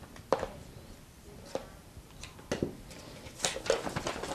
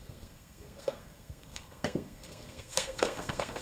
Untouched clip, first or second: first